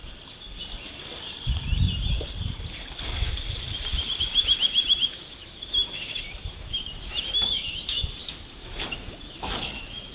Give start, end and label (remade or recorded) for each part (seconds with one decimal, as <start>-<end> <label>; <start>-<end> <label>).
0.0-4.2 recorded; 4.2-10.1 remade